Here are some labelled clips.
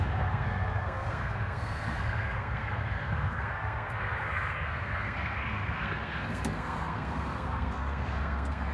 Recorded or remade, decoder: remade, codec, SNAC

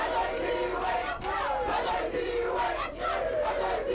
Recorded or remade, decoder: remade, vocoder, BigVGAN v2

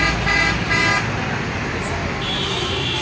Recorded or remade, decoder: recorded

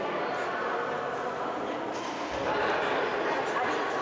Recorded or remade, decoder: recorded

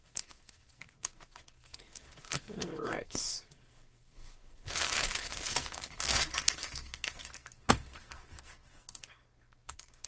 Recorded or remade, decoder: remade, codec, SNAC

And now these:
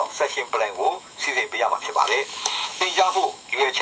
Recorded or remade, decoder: remade, autoencoder, DAC-VAE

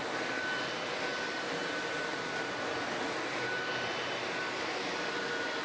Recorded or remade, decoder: recorded